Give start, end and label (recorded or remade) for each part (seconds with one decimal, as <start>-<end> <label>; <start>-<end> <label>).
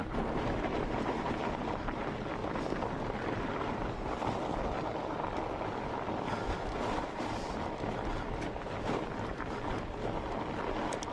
0.0-2.0 remade; 2.0-11.1 recorded